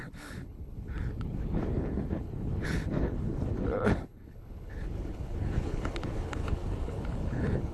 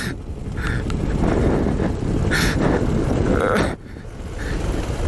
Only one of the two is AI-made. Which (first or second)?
first